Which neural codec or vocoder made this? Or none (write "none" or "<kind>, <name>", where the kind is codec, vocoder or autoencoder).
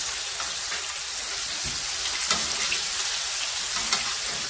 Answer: none